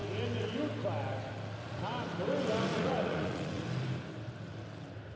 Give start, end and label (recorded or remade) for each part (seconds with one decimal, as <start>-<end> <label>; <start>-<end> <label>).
0.0-2.7 recorded; 2.7-3.6 remade; 3.6-5.2 recorded